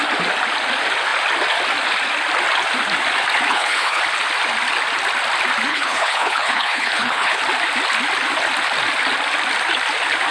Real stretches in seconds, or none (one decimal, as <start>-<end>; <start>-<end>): 0.0-3.5; 4.0-5.7; 7.4-10.3